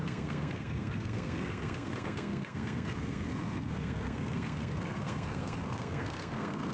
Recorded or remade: remade